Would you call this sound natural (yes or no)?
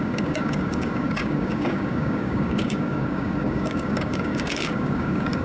no